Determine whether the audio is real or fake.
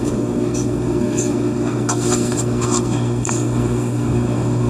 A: fake